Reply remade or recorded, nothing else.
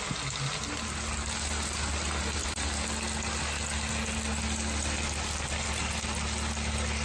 recorded